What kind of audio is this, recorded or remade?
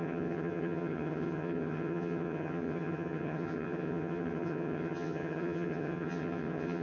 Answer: remade